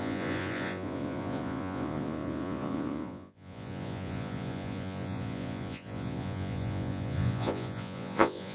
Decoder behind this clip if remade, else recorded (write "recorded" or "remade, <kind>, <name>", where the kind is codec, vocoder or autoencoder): remade, vocoder, Vocos